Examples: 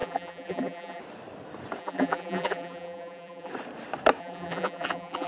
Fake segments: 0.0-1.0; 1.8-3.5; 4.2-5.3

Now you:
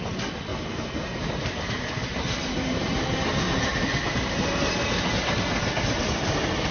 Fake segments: 0.5-1.6; 2.1-2.9